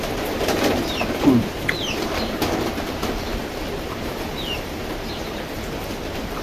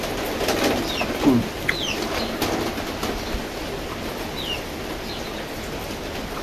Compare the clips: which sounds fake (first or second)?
first